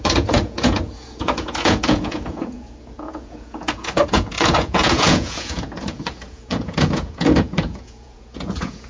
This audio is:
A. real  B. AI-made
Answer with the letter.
B